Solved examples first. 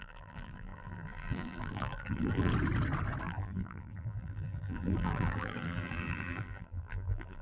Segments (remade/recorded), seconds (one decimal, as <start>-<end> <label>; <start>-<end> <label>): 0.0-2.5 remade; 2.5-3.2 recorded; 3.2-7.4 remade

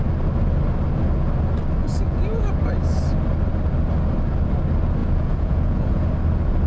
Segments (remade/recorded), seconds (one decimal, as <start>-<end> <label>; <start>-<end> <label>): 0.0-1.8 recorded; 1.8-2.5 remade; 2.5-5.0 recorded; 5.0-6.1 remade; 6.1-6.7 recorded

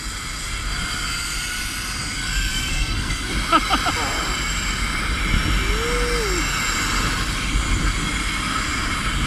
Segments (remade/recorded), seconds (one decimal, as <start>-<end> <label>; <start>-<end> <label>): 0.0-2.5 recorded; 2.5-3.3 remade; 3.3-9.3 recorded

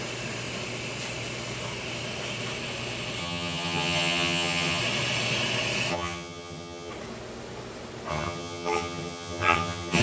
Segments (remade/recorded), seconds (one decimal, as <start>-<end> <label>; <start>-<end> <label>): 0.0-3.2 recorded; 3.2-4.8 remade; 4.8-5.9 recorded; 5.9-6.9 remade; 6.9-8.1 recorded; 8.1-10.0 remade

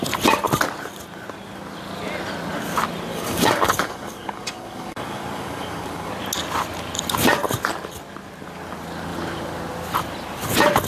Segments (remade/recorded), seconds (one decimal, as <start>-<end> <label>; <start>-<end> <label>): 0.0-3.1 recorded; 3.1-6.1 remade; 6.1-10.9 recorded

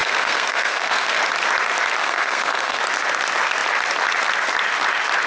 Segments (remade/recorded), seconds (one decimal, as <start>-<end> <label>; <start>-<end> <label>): 0.0-1.2 remade; 1.2-2.0 recorded; 2.0-2.8 remade; 2.8-5.3 recorded

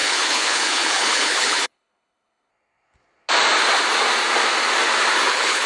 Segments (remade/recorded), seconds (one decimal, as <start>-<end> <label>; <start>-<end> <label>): 0.0-2.5 remade; 2.5-5.3 recorded; 5.3-5.7 remade

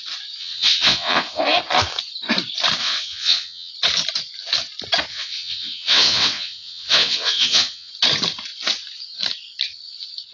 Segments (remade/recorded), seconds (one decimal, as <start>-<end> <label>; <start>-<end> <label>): 0.0-0.4 recorded; 0.4-1.4 remade; 1.4-2.8 recorded; 2.8-3.7 remade; 3.7-5.1 recorded; 5.1-7.9 remade; 7.9-10.3 recorded